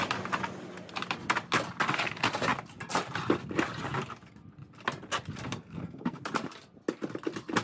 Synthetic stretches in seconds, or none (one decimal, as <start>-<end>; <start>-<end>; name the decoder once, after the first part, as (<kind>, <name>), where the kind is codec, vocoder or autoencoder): 5.5-6.2 (codec, SNAC)